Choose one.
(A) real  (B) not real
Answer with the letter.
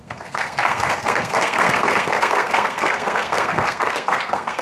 B